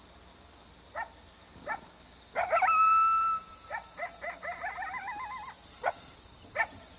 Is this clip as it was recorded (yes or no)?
yes